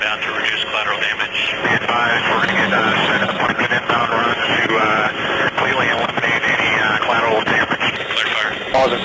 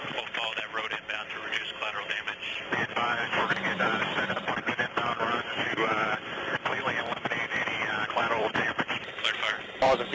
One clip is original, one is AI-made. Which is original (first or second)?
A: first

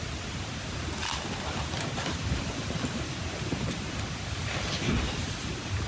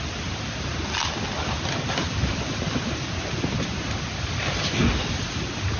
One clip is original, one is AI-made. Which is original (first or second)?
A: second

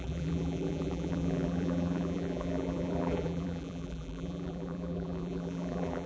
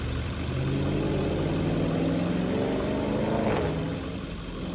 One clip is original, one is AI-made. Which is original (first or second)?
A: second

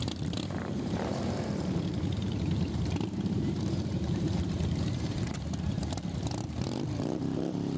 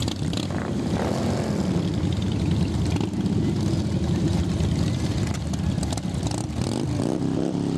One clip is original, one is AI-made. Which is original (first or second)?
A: second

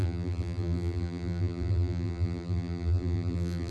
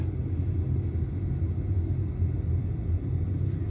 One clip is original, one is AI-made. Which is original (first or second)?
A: second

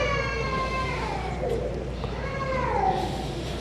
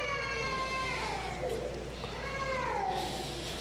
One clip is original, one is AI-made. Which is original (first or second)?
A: second